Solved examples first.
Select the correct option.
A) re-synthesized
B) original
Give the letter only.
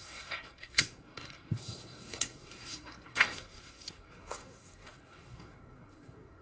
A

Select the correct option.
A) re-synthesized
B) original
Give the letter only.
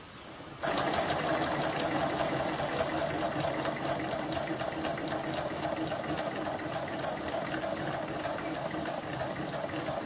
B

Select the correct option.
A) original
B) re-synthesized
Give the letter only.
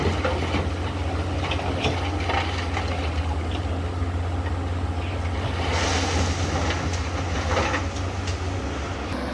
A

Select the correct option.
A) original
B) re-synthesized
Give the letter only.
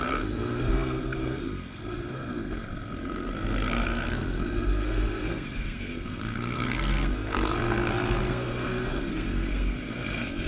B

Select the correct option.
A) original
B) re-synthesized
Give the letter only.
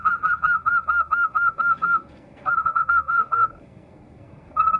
B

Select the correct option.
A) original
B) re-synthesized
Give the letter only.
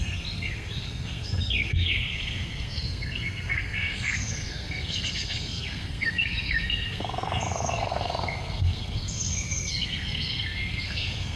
B